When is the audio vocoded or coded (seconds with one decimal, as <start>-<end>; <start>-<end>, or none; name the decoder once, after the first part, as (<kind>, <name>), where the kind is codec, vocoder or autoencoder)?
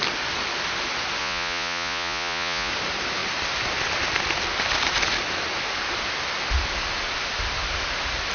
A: 1.2-2.7 (vocoder, Vocos)